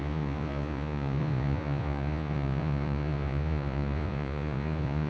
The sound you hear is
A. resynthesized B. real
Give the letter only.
A